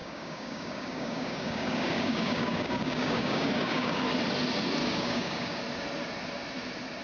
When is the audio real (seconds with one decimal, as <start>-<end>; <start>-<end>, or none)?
4.0-4.8; 5.6-7.0